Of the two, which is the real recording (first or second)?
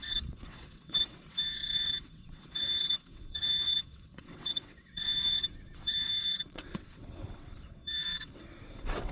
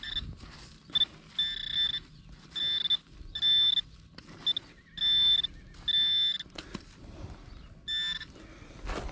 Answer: second